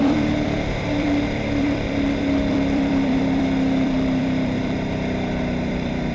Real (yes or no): no